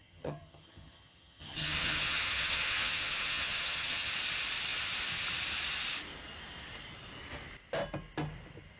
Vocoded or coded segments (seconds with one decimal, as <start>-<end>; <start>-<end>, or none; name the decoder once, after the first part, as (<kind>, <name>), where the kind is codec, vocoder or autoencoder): 0.0-4.1 (vocoder, HiFi-GAN)